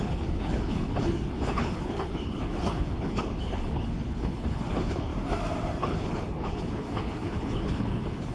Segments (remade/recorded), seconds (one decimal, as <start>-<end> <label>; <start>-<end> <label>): 0.0-5.1 remade; 5.1-5.8 recorded; 5.8-8.3 remade